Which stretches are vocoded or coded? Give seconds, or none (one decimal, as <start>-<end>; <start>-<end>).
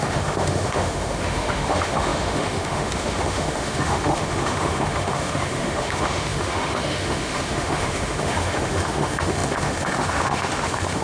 0.0-11.0